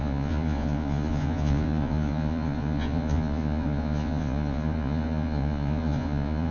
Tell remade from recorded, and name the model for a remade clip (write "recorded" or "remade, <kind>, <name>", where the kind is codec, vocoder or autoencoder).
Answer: remade, vocoder, Vocos